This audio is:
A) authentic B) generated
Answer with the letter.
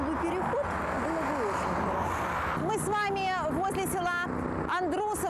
A